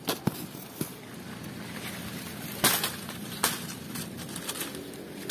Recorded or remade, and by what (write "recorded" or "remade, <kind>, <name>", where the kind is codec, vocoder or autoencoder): recorded